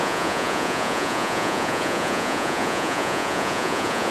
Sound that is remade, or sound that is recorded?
remade